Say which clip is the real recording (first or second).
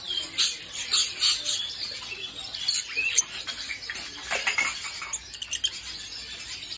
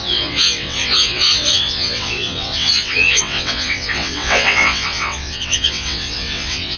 first